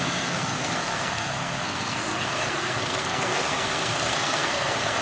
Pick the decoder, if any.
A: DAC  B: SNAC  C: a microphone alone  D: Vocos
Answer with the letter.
B